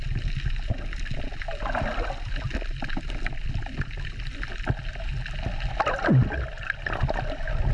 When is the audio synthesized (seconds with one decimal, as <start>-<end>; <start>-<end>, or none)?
none